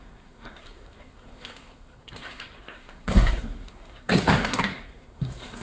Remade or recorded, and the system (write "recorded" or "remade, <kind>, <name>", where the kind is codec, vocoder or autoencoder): remade, codec, SNAC